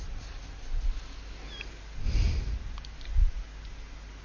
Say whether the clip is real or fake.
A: real